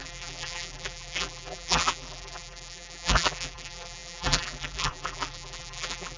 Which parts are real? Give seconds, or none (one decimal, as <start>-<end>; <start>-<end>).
none